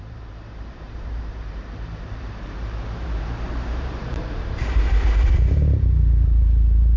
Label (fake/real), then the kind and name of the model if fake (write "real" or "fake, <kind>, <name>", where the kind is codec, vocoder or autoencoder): fake, vocoder, BigVGAN v2